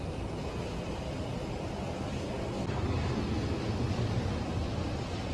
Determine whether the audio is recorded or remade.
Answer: recorded